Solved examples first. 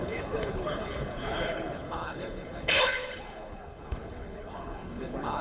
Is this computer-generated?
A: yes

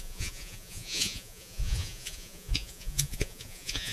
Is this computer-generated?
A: yes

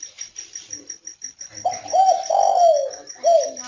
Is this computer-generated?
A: no